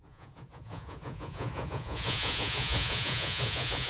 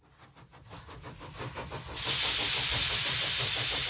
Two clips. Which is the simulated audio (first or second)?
first